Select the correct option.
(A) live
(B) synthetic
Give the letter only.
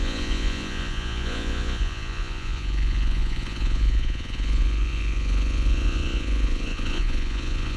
B